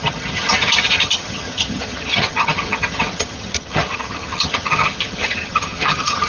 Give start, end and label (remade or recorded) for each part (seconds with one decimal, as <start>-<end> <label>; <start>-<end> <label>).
0.0-6.3 remade